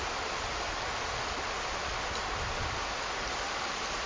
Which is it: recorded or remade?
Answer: recorded